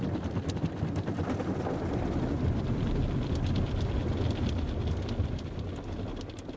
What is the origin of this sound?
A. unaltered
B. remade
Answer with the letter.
A